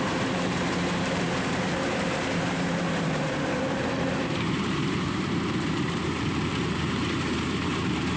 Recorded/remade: remade